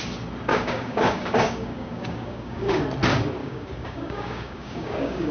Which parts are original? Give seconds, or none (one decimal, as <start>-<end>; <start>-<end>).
0.0-0.5; 2.8-3.4